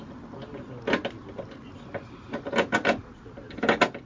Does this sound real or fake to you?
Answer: real